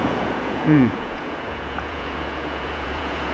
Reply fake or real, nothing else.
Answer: fake